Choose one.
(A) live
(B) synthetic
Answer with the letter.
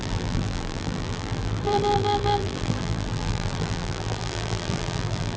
B